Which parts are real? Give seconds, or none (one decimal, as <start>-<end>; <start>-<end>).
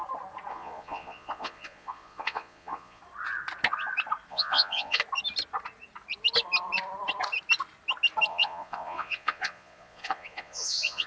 0.0-0.5; 3.0-4.3; 5.0-8.3